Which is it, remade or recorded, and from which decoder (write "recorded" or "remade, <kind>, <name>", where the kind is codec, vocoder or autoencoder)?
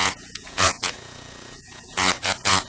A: remade, vocoder, Vocos